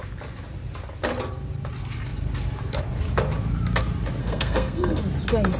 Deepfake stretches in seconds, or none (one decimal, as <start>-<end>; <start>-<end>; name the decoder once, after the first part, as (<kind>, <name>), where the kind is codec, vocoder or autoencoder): 4.2-5.0 (codec, SNAC)